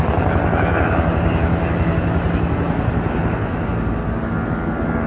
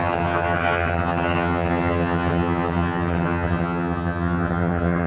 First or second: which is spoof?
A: second